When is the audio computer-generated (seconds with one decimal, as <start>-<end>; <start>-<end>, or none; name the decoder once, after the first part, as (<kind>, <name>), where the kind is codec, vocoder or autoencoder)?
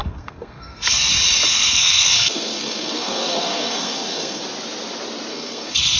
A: 0.0-1.1 (codec, SNAC); 1.5-4.4; 5.3-6.0